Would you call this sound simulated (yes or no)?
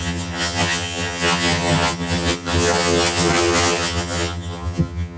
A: yes